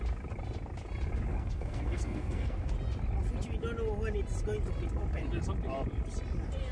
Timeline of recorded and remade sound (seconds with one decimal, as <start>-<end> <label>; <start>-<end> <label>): 0.0-1.3 recorded; 1.3-2.7 remade; 2.7-6.7 recorded

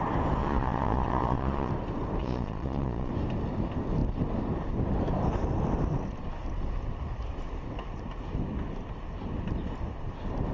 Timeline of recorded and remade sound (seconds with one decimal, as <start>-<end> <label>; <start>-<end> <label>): 0.0-0.4 recorded; 0.4-1.7 remade; 1.7-2.2 recorded; 2.2-3.1 remade; 3.1-10.5 recorded

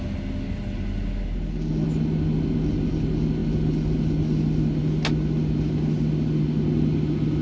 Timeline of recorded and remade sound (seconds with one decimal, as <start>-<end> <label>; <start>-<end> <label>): 0.0-7.4 recorded